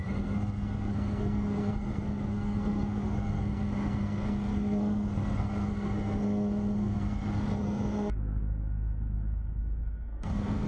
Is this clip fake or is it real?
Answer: fake